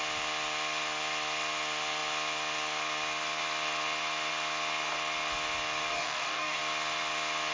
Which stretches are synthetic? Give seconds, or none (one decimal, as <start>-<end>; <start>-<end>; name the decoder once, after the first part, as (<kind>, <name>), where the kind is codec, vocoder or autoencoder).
5.9-6.6 (codec, DAC)